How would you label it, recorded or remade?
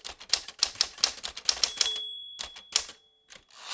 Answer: recorded